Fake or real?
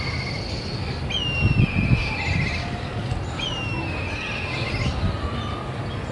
real